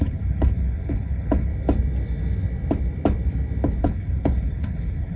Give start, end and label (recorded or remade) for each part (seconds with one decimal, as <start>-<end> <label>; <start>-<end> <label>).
0.0-1.5 remade; 1.5-3.8 recorded; 3.8-5.2 remade